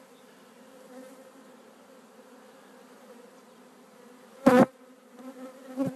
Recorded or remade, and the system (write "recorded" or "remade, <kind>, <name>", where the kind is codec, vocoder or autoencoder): recorded